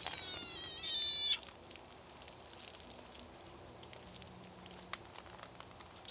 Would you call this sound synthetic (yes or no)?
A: no